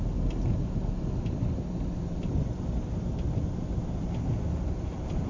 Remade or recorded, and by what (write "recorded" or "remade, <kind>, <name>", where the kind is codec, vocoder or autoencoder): recorded